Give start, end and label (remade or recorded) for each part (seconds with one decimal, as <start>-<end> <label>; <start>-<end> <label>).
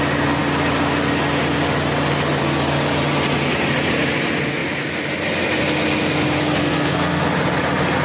0.0-6.6 recorded; 6.6-7.2 remade; 7.2-8.0 recorded